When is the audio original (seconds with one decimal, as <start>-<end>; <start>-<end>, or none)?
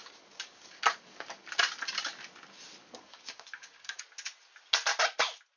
1.6-2.8; 4.0-5.6